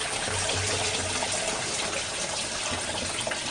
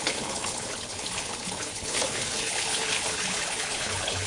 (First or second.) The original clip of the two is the first